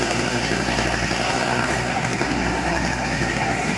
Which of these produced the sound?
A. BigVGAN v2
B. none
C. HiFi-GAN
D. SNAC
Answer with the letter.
D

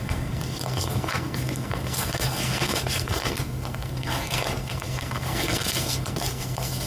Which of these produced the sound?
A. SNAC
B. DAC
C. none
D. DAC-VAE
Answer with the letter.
A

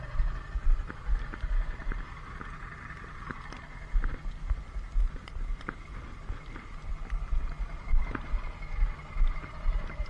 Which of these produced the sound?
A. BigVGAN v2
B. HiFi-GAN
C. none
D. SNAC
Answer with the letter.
C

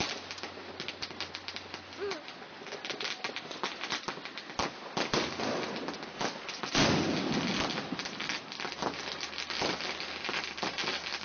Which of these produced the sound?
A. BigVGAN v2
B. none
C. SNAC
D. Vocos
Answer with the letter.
B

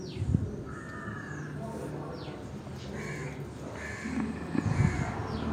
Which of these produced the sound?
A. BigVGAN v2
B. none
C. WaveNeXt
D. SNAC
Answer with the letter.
B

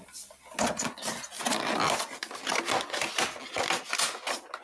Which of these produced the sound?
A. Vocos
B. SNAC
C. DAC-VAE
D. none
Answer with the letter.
D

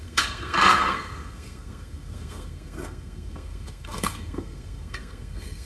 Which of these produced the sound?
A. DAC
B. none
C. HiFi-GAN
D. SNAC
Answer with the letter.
D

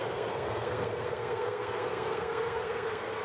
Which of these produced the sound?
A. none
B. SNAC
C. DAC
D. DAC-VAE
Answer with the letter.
B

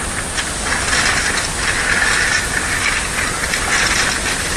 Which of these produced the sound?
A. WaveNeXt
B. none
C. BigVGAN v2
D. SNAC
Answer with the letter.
B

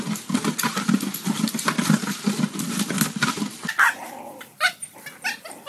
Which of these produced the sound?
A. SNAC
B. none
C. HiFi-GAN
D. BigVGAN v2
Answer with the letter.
B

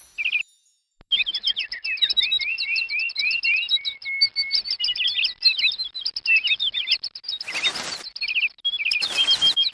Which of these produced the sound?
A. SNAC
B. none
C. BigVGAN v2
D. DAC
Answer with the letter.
B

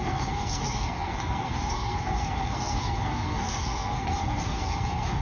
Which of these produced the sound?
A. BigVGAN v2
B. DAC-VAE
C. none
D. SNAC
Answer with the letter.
D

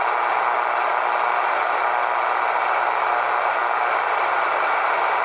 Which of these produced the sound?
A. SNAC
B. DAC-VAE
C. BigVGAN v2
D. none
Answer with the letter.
D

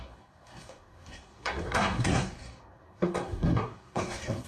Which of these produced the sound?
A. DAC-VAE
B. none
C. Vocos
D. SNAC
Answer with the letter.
D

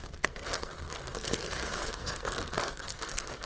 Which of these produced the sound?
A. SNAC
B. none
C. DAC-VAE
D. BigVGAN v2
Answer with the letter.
A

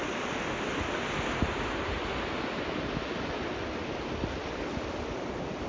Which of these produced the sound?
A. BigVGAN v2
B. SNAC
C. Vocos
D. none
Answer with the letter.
D